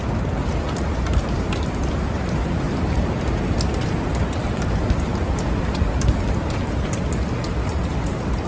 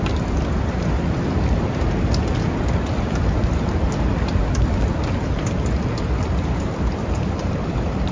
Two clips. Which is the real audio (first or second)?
first